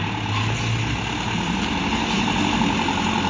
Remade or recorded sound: recorded